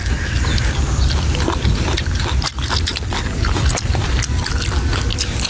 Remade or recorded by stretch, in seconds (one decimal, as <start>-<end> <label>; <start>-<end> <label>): 0.0-5.5 recorded